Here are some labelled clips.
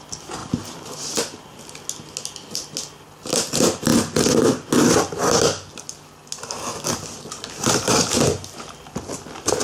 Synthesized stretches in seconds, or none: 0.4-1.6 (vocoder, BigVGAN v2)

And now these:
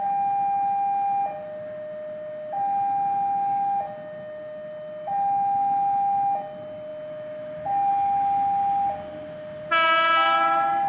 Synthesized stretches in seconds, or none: none

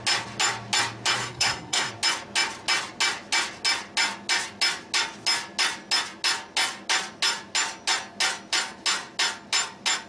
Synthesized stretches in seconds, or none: 1.2-1.9 (codec, SNAC)

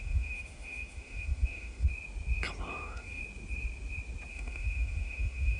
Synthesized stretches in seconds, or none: 0.0-1.9 (autoencoder, DAC-VAE); 2.7-3.2; 4.3-5.6

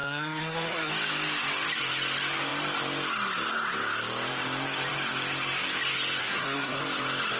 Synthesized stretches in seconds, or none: 0.0-0.9 (codec, SNAC); 6.2-6.8

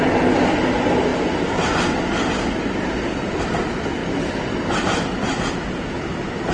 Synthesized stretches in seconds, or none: none